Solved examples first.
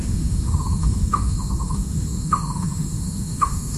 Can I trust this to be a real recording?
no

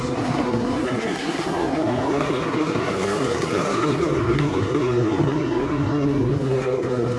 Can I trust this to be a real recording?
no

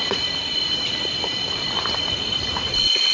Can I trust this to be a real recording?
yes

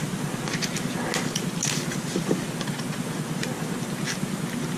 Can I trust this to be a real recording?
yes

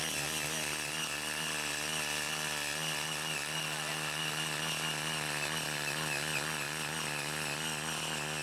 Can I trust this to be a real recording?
yes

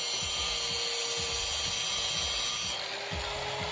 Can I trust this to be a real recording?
yes